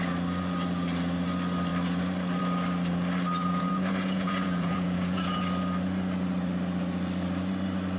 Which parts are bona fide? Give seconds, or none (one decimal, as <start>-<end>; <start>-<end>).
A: 0.0-3.4; 5.4-8.0